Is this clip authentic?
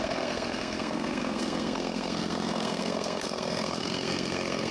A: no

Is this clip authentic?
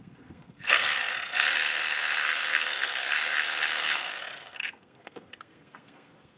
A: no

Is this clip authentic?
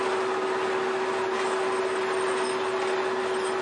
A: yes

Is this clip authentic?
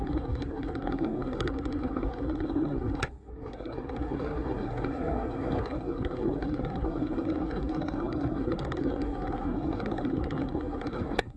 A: no